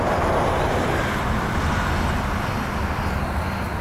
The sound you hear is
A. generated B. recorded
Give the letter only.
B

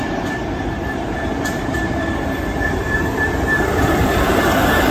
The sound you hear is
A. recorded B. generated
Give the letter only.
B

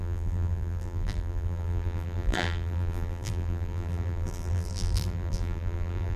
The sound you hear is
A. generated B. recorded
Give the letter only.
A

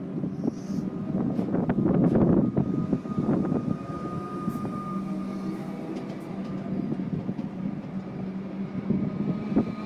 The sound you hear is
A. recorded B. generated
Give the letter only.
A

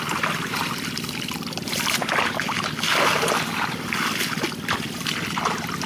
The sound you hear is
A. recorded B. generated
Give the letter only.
A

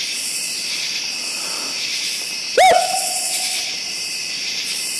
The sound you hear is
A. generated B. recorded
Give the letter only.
A